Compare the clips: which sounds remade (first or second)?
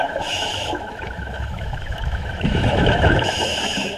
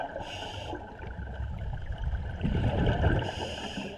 first